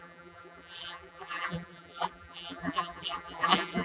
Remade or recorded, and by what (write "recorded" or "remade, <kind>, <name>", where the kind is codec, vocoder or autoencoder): remade, vocoder, BigVGAN v2